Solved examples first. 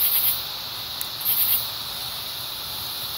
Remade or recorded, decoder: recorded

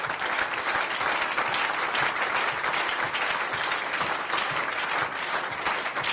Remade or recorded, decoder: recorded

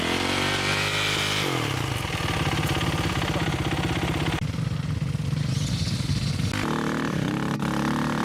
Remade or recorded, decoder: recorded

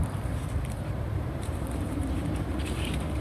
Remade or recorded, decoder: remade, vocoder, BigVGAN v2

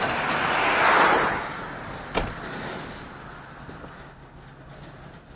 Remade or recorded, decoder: recorded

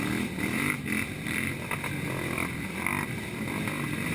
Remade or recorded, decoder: recorded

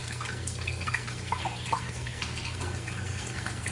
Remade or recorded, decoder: remade, codec, SNAC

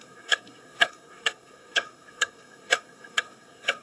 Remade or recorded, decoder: remade, codec, SNAC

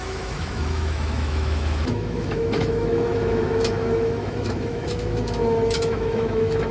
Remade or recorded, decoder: remade, autoencoder, DAC-VAE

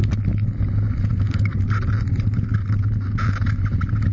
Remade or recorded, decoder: recorded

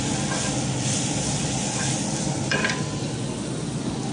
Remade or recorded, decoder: recorded